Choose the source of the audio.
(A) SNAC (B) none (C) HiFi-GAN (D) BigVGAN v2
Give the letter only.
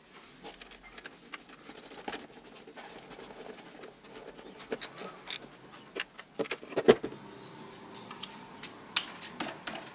B